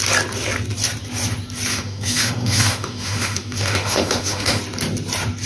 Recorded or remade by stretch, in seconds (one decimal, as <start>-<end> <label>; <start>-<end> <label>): 0.0-1.7 recorded; 1.7-4.6 remade; 4.6-5.5 recorded